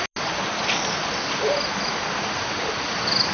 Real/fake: real